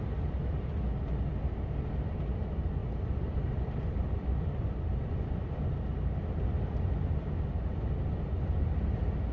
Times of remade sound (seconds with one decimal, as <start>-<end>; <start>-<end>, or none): 2.8-6.7